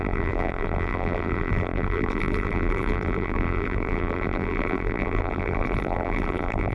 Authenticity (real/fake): fake